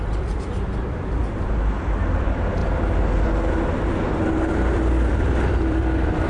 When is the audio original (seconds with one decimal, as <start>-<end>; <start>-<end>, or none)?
1.2-2.1